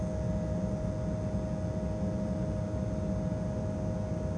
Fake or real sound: real